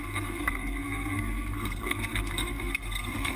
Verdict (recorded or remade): remade